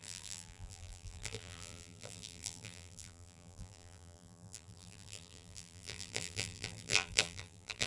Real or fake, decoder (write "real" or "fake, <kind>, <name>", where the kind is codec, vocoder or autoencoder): fake, vocoder, BigVGAN v2